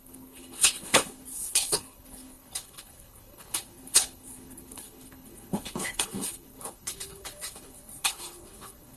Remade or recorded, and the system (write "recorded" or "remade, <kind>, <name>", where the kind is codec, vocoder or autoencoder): remade, codec, HILCodec